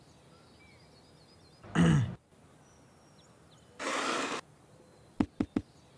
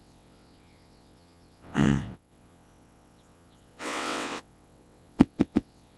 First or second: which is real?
first